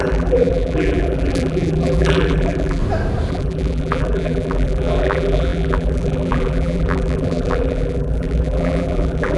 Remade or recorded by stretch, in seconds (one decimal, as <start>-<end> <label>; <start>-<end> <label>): 0.0-2.8 remade; 2.8-3.3 recorded; 3.3-9.4 remade